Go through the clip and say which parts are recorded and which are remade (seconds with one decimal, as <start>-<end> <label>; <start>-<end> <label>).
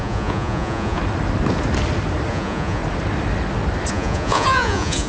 0.0-1.0 remade; 1.0-2.3 recorded; 2.3-2.8 remade; 2.8-3.9 recorded; 3.9-5.1 remade